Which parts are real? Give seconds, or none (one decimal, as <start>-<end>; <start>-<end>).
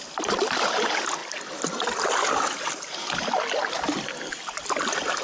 0.0-5.2